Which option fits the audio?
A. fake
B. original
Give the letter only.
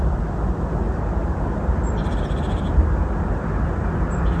B